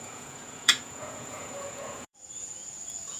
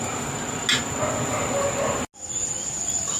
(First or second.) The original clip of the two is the second